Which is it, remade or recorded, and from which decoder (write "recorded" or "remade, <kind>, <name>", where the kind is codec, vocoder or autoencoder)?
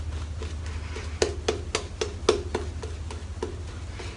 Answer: recorded